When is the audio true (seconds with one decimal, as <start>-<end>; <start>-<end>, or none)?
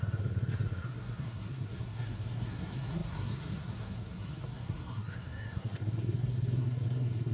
none